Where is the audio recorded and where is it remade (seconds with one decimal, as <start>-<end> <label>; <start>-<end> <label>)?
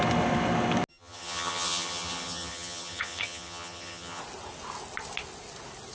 0.0-0.9 recorded; 0.9-4.2 remade; 4.2-5.9 recorded